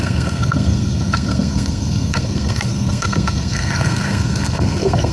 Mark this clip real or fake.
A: fake